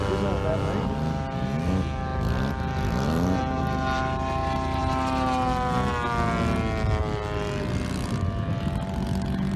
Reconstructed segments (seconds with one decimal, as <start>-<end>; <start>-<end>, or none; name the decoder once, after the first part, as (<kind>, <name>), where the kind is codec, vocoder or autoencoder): none